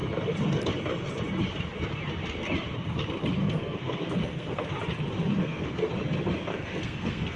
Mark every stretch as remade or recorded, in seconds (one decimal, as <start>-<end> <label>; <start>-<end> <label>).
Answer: 0.0-3.4 recorded; 3.4-4.6 remade; 4.6-5.4 recorded; 5.4-5.9 remade; 5.9-6.5 recorded; 6.5-7.4 remade